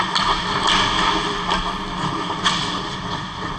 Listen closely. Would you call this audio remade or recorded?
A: recorded